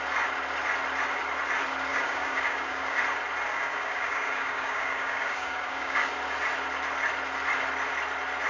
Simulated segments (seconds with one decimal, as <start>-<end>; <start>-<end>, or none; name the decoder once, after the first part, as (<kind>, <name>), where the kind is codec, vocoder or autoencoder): 1.9-3.0 (codec, DAC); 3.5-6.1